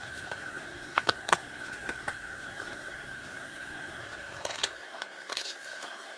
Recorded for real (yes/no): no